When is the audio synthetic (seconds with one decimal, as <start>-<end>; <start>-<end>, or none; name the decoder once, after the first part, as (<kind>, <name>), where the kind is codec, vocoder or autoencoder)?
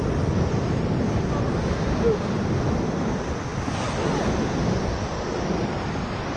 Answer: none